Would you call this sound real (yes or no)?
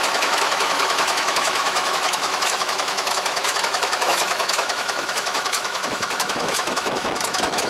no